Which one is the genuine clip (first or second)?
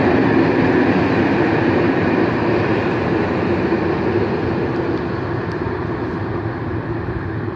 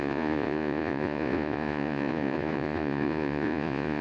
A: first